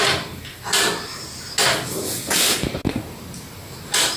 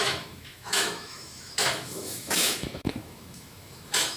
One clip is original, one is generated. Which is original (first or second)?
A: first